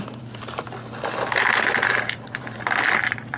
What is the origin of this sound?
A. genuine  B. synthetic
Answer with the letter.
B